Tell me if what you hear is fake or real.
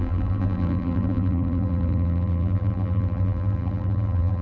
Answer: fake